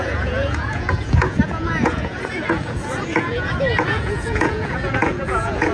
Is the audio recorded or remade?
remade